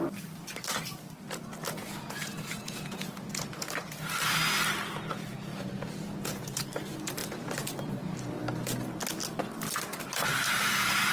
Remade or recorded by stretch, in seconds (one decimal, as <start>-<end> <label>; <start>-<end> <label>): 0.0-1.8 recorded; 1.8-3.7 remade; 3.7-5.5 recorded; 5.5-6.6 remade; 6.6-10.3 recorded; 10.3-11.1 remade